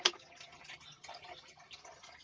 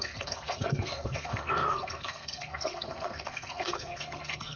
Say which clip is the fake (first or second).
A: second